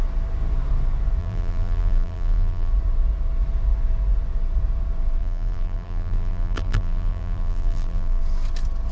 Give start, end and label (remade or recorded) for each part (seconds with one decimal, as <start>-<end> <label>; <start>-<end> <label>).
0.0-1.2 recorded; 1.2-2.7 remade; 2.7-5.2 recorded; 5.2-8.2 remade; 8.2-8.9 recorded

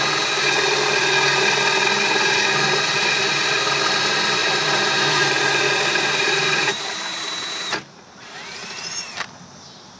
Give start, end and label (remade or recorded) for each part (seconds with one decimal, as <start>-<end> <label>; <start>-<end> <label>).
0.0-4.4 recorded; 4.4-9.3 remade; 9.3-10.0 recorded

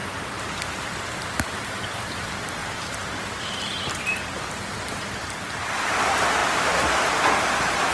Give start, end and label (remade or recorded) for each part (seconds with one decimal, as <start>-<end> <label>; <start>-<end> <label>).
0.0-0.7 recorded; 0.7-7.9 remade

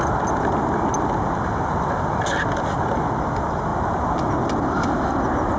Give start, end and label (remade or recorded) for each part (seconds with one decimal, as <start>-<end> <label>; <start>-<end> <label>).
0.0-5.6 recorded

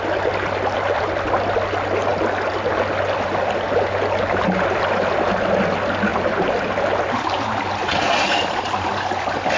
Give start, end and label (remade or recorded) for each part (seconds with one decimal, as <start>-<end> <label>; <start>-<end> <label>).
0.0-6.1 recorded; 6.1-6.7 remade; 6.7-9.6 recorded

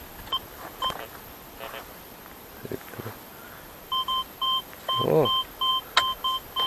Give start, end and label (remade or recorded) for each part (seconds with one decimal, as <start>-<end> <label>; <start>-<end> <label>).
0.0-5.7 remade; 5.7-6.7 recorded